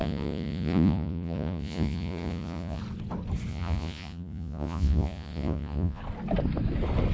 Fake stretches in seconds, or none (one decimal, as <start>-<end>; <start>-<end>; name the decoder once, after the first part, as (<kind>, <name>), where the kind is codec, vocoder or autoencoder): 0.0-2.8 (vocoder, Vocos); 3.5-6.0